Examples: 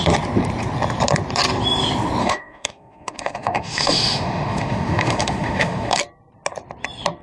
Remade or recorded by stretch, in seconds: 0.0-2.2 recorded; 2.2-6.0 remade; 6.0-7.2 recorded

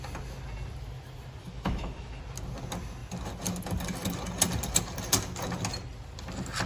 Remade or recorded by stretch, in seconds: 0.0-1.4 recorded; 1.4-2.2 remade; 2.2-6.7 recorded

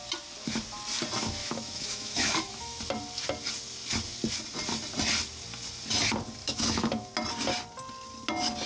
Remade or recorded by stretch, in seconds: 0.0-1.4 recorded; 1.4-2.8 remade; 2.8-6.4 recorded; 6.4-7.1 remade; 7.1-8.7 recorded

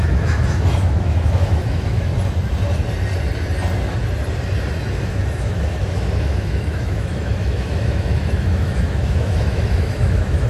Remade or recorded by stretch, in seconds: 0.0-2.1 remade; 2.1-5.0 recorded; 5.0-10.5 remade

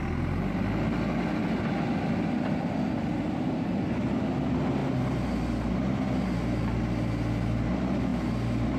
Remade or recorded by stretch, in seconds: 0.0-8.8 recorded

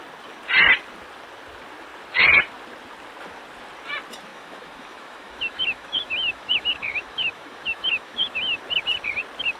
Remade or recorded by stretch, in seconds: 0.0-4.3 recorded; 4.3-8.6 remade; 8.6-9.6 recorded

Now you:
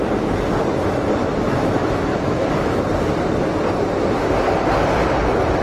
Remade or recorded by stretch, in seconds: 0.0-1.2 recorded; 1.2-2.8 remade; 2.8-5.6 recorded